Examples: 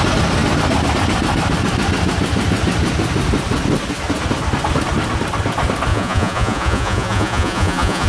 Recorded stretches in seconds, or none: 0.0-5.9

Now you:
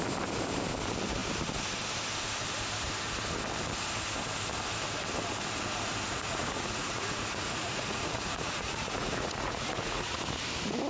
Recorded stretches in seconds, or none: 0.0-6.1; 10.2-10.9

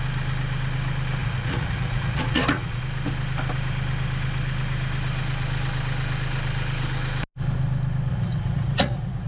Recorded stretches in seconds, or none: 0.0-1.2; 2.8-8.1